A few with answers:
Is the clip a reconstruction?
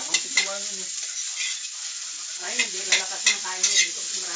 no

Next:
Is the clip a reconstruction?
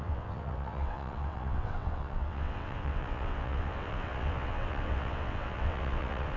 yes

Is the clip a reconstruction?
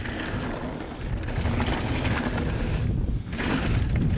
no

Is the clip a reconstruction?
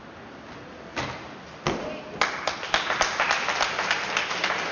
no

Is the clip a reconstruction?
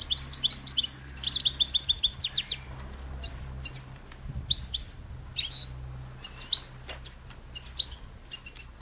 no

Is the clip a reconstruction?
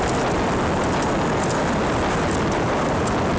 no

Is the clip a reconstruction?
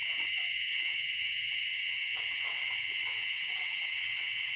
yes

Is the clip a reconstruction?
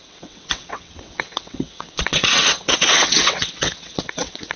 yes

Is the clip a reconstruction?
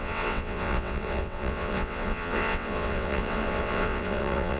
yes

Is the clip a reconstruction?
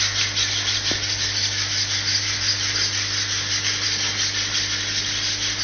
no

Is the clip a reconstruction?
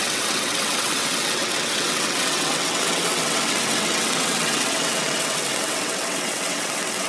yes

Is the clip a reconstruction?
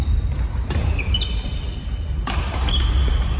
no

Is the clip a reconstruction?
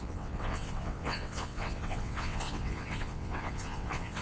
yes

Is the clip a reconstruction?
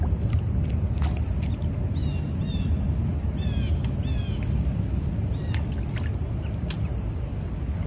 no